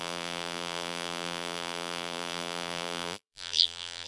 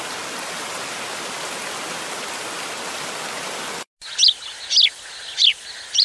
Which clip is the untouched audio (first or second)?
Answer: second